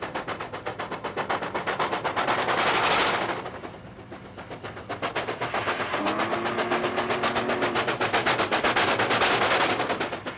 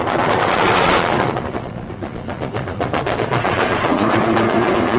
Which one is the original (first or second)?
first